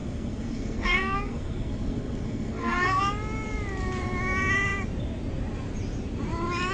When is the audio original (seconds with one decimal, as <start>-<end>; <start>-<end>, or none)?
3.0-6.7